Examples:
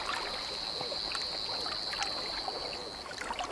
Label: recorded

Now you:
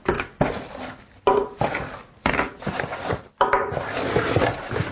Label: recorded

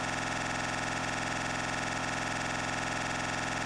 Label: recorded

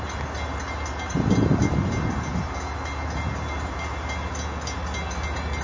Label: recorded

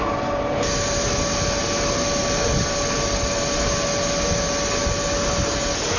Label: recorded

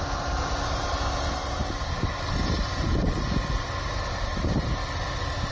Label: recorded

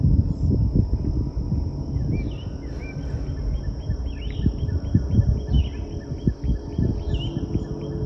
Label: recorded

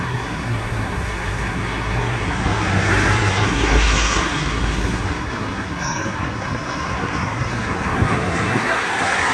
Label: remade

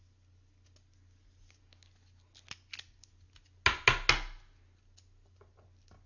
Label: recorded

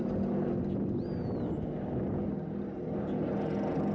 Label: recorded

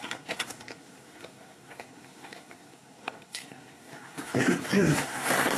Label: remade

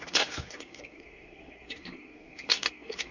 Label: remade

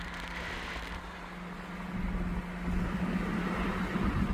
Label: recorded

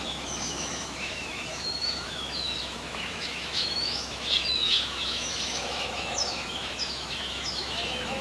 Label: remade